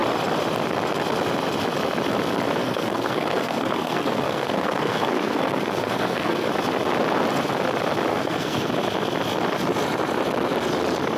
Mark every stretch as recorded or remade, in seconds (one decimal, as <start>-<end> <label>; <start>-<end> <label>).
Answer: 0.0-2.6 recorded; 2.6-6.5 remade; 6.5-8.1 recorded; 8.1-8.7 remade; 8.7-11.2 recorded